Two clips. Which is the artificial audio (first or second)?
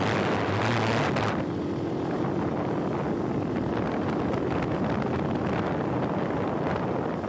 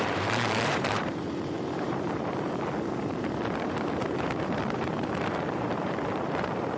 second